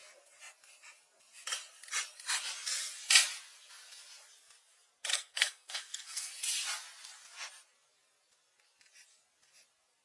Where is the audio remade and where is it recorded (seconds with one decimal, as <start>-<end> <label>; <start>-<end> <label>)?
0.0-5.1 recorded; 5.1-6.3 remade; 6.3-10.0 recorded